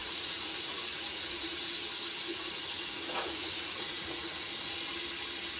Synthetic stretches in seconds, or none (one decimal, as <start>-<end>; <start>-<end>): 0.0-1.7; 2.3-4.5